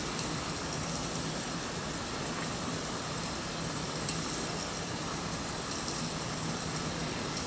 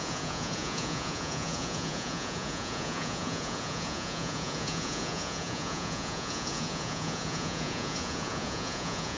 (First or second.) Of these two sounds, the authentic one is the first